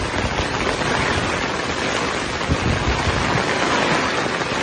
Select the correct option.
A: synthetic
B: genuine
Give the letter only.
B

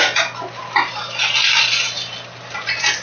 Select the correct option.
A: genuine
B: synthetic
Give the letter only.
A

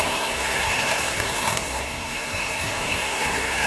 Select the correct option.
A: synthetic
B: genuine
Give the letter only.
A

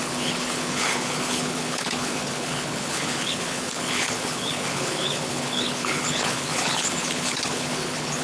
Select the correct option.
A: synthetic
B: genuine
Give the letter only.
A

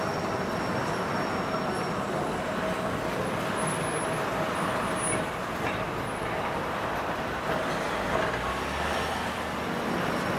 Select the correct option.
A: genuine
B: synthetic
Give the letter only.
A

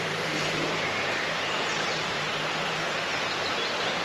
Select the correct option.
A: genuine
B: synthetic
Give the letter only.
B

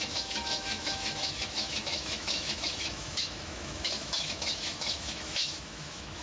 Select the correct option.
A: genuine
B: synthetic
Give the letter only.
B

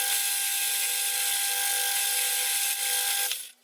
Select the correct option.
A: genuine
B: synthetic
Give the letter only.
A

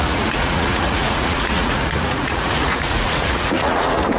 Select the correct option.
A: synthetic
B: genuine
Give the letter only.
A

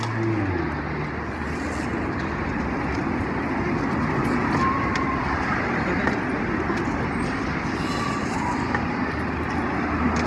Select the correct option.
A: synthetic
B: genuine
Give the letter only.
B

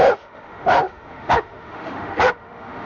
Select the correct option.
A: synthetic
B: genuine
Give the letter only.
A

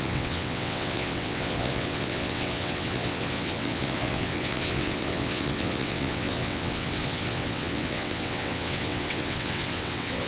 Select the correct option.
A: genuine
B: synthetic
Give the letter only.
B